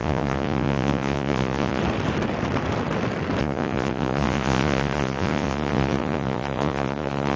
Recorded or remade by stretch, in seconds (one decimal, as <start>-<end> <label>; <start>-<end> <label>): 0.0-1.8 remade; 1.8-3.4 recorded; 3.4-7.4 remade